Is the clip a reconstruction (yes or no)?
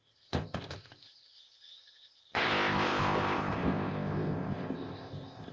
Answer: yes